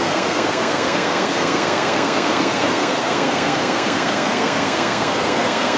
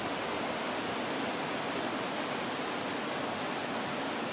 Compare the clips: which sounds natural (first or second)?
second